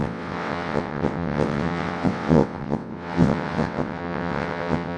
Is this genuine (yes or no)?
no